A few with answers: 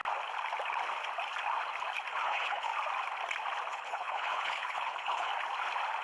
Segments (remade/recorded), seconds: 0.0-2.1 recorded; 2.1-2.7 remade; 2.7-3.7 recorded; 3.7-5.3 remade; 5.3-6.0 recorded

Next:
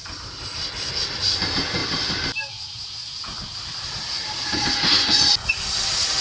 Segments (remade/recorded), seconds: 0.0-6.2 recorded

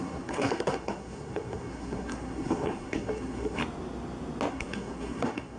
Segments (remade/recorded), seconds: 0.0-3.6 remade; 3.6-4.5 recorded; 4.5-5.6 remade

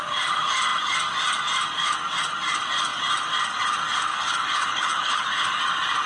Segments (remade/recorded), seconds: 0.0-4.1 recorded; 4.1-5.6 remade; 5.6-6.1 recorded

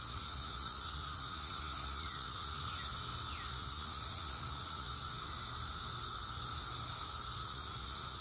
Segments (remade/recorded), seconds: 0.0-2.9 remade; 2.9-3.5 recorded; 3.5-4.9 remade; 4.9-7.4 recorded; 7.4-8.2 remade

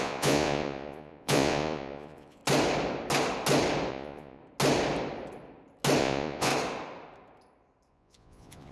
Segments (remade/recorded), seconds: 0.0-2.4 remade; 2.4-3.9 recorded; 3.9-4.4 remade; 4.4-6.0 recorded; 6.0-6.5 remade; 6.5-7.9 recorded; 7.9-8.7 remade